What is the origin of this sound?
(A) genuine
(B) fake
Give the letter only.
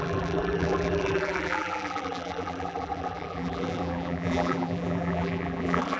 B